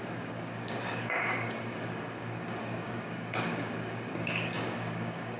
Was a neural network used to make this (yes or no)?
yes